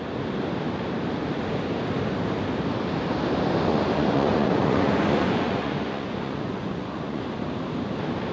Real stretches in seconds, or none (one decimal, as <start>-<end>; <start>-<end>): 0.0-3.7; 7.2-8.3